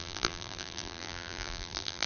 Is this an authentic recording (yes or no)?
no